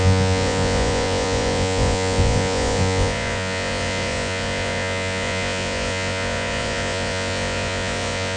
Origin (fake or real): fake